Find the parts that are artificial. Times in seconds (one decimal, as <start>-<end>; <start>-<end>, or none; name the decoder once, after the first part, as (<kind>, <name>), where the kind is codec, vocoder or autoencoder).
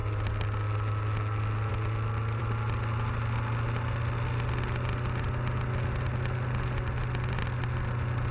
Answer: none